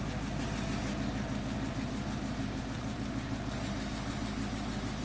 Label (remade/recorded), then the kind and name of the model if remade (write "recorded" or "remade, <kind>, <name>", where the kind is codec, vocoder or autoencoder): recorded